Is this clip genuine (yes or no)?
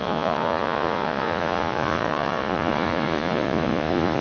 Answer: no